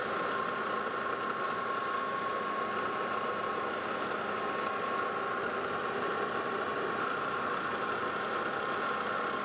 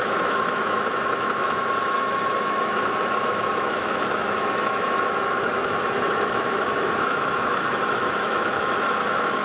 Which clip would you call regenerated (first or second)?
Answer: second